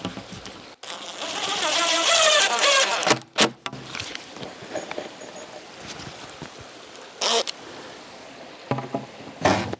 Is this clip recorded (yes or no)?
yes